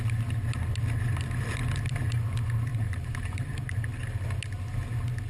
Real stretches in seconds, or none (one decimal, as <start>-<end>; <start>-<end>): 0.0-2.7; 3.8-5.3